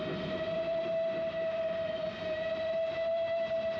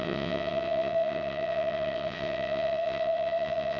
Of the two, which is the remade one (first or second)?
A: second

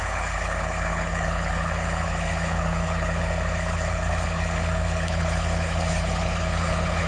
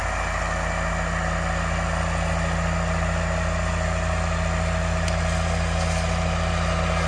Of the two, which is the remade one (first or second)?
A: first